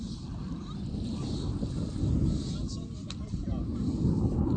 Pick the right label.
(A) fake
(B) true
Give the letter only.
B